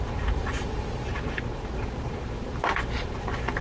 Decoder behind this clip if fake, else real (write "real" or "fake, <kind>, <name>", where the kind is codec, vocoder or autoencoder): fake, vocoder, BigVGAN v2